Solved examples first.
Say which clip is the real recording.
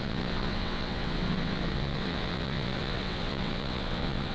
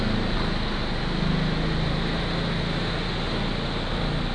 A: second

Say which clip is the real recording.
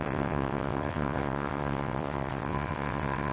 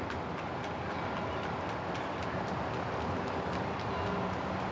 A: second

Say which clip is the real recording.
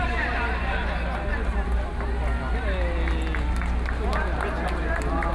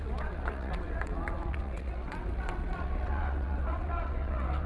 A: first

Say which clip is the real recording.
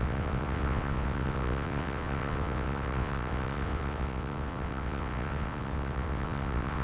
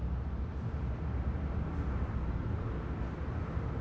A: second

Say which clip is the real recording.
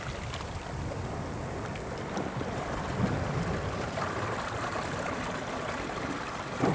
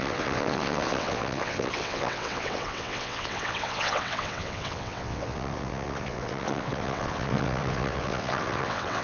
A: first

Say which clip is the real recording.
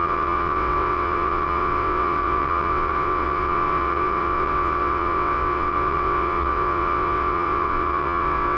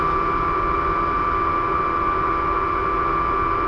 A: second